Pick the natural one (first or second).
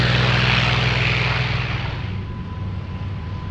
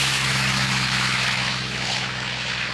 first